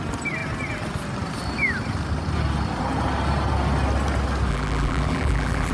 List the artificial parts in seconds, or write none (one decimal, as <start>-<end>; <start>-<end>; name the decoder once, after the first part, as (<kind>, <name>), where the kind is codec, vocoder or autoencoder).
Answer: 4.5-5.7 (vocoder, BigVGAN v2)